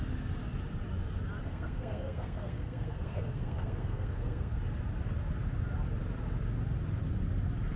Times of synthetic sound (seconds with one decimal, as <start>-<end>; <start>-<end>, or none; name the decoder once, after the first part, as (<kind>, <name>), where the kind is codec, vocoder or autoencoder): 1.4-4.6 (codec, SNAC)